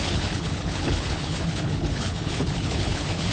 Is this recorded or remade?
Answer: remade